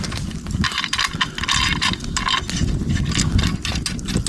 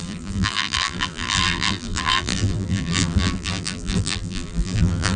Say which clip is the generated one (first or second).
second